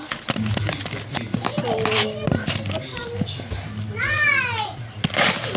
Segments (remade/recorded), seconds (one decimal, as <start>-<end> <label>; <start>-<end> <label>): 0.0-5.6 recorded